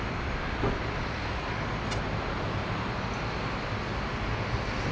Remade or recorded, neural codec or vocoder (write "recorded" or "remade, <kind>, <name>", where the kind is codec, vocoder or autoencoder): recorded